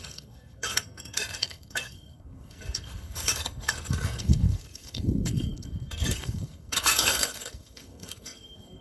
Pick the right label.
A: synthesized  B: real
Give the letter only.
A